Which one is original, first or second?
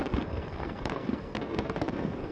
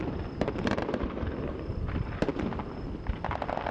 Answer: second